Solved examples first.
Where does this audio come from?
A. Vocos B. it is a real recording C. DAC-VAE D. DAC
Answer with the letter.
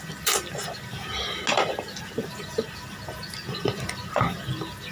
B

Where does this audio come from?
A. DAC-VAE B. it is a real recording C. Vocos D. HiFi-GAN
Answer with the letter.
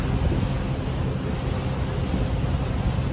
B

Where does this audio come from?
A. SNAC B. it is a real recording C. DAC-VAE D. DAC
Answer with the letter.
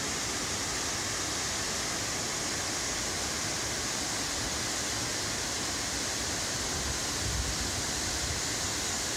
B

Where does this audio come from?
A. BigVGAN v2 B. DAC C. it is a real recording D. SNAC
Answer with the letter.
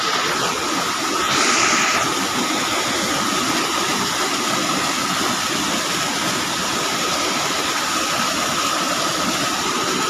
C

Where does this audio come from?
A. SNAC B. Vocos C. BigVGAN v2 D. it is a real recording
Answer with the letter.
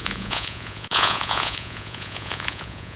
B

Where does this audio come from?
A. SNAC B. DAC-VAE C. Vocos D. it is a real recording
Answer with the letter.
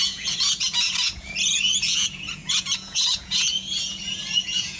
C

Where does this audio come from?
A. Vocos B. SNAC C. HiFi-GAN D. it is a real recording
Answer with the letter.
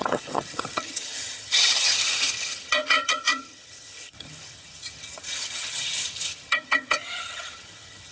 C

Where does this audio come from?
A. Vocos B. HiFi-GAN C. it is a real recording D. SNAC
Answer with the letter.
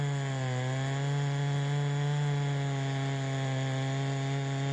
C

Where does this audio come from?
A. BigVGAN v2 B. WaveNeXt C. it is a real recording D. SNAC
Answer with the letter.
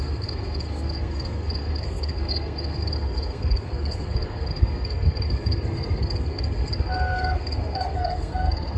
D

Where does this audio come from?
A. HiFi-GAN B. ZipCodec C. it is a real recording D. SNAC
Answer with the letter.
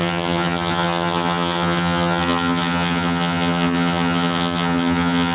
A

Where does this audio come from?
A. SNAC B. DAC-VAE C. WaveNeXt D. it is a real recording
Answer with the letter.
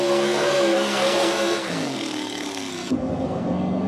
A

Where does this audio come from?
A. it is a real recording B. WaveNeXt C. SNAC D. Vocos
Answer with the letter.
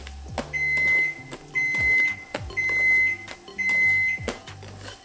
A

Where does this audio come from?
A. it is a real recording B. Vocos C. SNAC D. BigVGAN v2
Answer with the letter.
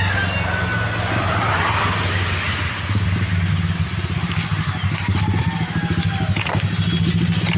A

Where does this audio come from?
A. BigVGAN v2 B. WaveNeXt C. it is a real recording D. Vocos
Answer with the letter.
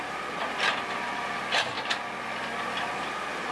C